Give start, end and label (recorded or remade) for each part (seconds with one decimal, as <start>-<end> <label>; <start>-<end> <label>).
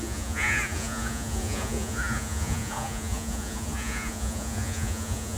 0.0-5.4 remade